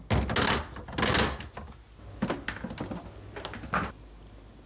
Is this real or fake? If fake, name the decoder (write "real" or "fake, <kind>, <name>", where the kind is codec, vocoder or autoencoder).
real